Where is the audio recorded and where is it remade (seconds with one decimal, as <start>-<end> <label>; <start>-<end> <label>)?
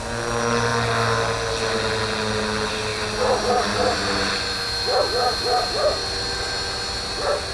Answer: 0.0-7.5 recorded